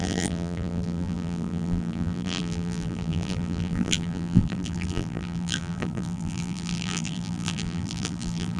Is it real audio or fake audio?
fake